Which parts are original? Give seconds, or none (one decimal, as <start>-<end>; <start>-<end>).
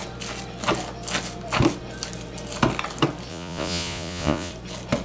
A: 0.0-3.3; 4.5-5.0